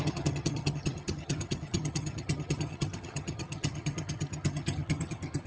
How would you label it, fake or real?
fake